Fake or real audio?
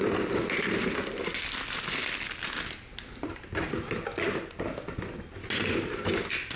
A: real